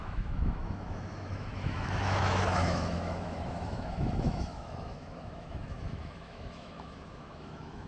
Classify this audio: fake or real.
fake